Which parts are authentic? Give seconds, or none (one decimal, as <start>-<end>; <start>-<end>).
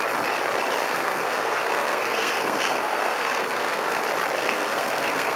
0.0-0.8; 4.0-4.4